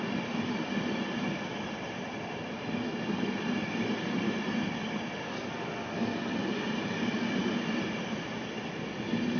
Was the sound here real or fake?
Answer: real